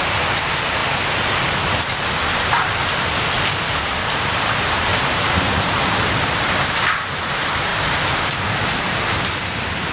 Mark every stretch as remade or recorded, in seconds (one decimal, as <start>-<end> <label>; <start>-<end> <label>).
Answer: 0.0-0.8 remade; 0.8-2.3 recorded; 2.3-2.8 remade; 2.8-3.7 recorded; 3.7-9.9 remade